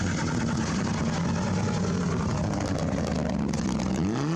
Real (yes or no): yes